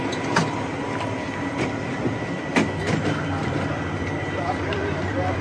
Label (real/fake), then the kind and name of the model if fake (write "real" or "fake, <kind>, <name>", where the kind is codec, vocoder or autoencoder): fake, vocoder, BigVGAN v2